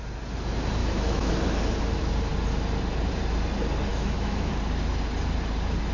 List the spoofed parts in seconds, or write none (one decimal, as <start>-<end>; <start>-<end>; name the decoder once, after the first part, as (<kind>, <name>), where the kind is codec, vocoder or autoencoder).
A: 0.8-1.3 (autoencoder, DAC-VAE); 3.9-4.5